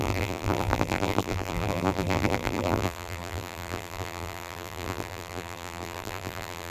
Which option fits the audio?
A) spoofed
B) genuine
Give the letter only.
A